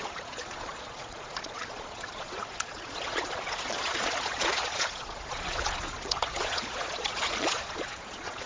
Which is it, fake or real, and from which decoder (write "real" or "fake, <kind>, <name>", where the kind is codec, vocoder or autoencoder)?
fake, vocoder, Vocos